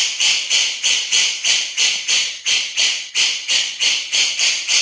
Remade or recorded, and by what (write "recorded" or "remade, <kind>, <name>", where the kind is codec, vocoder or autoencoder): remade, vocoder, BigVGAN v2